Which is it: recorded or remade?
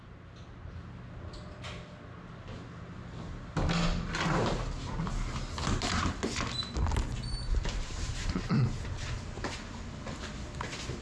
recorded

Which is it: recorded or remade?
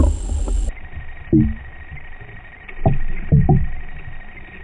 recorded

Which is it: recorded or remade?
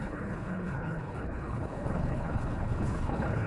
remade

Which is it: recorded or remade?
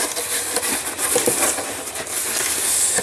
recorded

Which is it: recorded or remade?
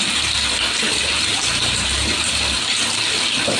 recorded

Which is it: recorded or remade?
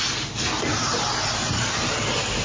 recorded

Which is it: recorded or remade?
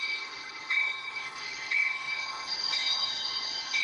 remade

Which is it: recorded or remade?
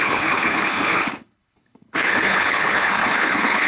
remade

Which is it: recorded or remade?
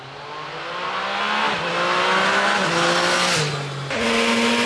recorded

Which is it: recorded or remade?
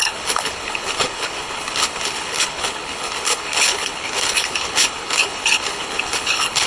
remade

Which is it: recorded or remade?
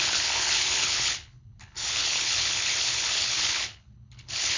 remade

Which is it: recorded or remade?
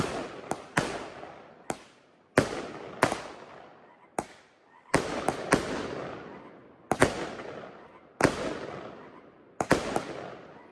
recorded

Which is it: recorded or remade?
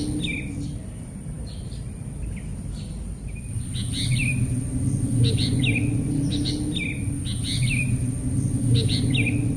recorded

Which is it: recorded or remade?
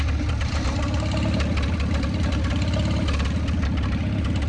recorded